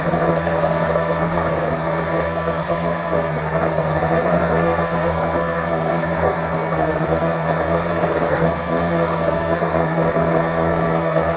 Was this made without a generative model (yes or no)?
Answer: no